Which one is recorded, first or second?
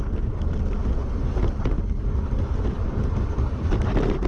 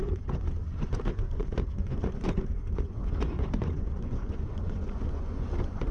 first